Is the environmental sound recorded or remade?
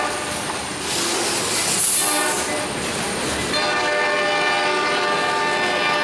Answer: recorded